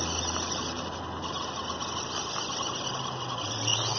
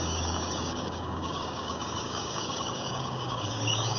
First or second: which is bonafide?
first